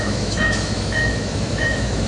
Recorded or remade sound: remade